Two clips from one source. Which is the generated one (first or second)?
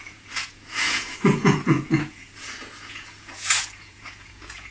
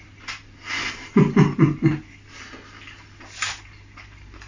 first